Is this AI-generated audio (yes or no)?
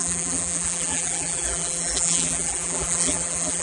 yes